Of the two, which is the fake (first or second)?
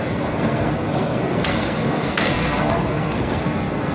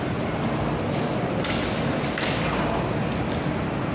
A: first